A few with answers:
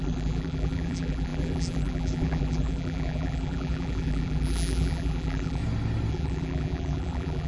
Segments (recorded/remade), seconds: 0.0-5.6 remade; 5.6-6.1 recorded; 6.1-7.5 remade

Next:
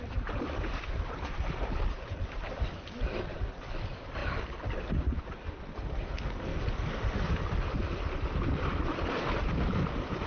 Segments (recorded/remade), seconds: 0.0-6.5 remade; 6.5-7.0 recorded; 7.0-10.3 remade

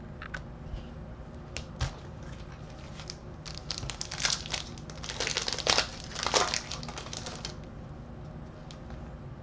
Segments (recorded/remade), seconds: 0.0-9.4 recorded

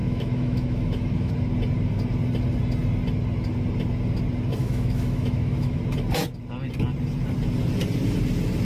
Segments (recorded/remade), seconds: 0.0-1.3 remade; 1.3-4.6 recorded; 4.6-5.8 remade; 5.8-8.6 recorded

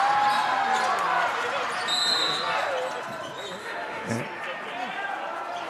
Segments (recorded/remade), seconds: 0.0-3.6 recorded; 3.6-4.1 remade; 4.1-5.7 recorded

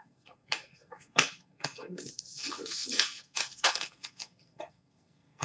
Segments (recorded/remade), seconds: 0.0-5.4 remade

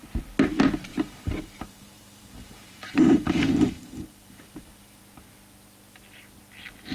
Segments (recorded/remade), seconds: 0.0-0.9 recorded; 0.9-5.0 remade; 5.0-6.9 recorded

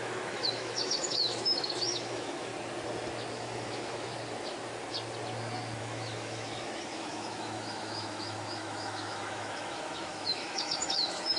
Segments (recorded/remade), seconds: 0.0-2.5 remade; 2.5-3.3 recorded; 3.3-4.1 remade; 4.1-5.8 recorded; 5.8-11.4 remade